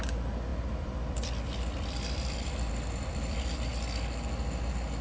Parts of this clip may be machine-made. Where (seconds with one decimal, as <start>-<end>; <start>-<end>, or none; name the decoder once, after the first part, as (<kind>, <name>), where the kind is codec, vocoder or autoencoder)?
0.0-3.7 (vocoder, BigVGAN v2)

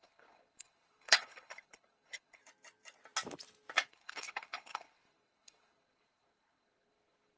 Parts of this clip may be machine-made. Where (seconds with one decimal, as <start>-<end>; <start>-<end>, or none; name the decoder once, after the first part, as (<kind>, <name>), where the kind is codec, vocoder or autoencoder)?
0.0-2.4 (codec, HILCodec); 3.9-7.4

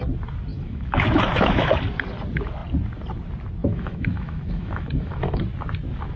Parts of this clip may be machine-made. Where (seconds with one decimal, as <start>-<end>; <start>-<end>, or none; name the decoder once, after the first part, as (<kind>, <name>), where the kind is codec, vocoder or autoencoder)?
0.5-1.8 (autoencoder, DAC-VAE); 3.6-5.4

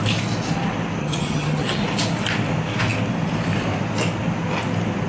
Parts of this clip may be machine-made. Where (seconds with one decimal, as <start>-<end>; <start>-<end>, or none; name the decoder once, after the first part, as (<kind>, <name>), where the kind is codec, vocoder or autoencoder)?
1.0-1.8 (vocoder, HiFi-GAN)

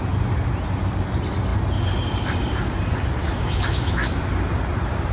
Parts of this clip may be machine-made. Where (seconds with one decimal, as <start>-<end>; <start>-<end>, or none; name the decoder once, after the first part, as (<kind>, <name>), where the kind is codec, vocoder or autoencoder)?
3.2-4.2 (autoencoder, DAC-VAE)

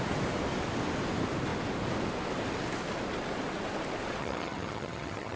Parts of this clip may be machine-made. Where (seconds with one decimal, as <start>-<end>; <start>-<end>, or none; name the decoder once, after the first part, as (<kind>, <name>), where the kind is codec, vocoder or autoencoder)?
4.2-5.4 (vocoder, HiFi-GAN)

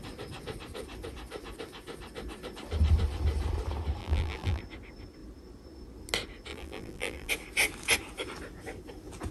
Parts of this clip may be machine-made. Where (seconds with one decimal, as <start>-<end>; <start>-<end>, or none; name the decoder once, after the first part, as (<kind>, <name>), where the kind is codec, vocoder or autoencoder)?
4.0-4.6 (vocoder, BigVGAN v2); 6.5-7.3